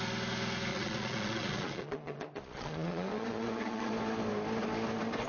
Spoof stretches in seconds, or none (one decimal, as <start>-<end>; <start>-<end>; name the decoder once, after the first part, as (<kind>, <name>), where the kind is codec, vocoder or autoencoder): 0.7-3.9 (vocoder, Vocos)